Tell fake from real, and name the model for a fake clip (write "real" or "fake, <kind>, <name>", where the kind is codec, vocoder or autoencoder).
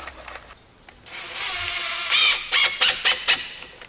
real